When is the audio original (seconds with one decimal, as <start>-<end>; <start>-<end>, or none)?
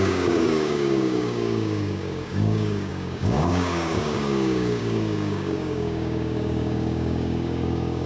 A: none